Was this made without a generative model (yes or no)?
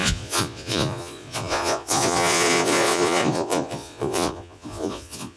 no